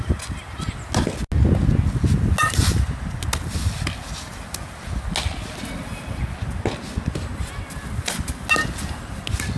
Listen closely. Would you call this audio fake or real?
real